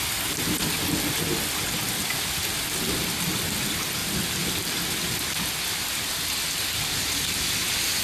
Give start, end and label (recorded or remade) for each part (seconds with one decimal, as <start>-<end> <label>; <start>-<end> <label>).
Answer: 0.0-4.0 recorded; 4.0-6.1 remade; 6.1-8.0 recorded